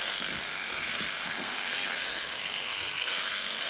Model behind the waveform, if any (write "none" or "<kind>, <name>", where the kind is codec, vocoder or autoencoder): codec, SNAC